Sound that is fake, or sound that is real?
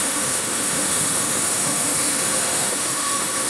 fake